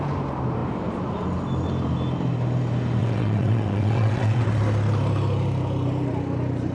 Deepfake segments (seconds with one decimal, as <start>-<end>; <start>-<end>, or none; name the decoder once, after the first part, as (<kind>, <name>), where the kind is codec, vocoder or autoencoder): 3.0-4.5 (vocoder, WaveNeXt)